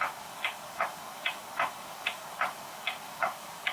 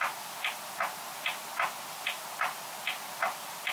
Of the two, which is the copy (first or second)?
first